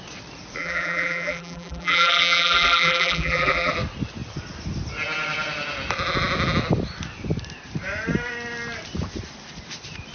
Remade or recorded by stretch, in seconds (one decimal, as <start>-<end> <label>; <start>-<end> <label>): 0.0-0.6 recorded; 0.6-3.7 remade; 3.7-10.1 recorded